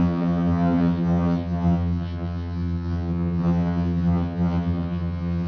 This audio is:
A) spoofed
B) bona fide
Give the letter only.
A